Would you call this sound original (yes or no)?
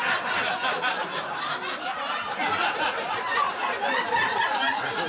yes